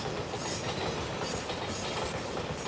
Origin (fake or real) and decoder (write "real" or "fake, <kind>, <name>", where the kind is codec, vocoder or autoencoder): real